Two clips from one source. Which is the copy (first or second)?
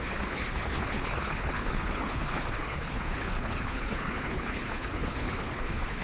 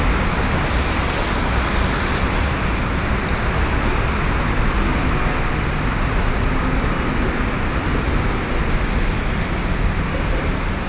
first